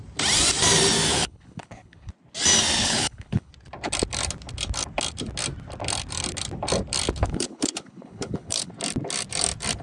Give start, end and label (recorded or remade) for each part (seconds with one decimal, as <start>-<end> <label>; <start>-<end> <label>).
0.0-1.1 recorded; 1.1-2.1 remade; 2.1-2.8 recorded; 2.8-3.5 remade; 3.5-7.2 recorded; 7.2-8.7 remade; 8.7-9.8 recorded